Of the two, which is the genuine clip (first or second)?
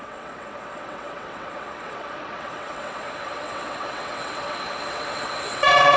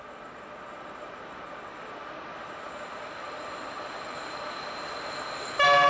second